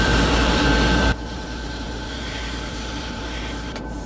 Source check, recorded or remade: remade